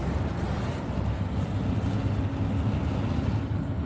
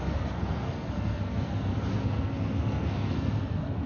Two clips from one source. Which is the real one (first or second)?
first